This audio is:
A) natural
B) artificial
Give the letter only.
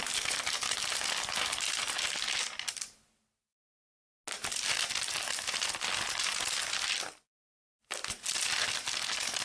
A